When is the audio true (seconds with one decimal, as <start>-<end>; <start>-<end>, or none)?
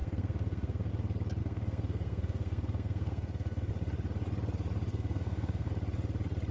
0.9-1.4; 3.7-4.9; 5.7-6.5